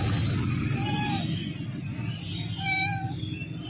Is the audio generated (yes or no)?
yes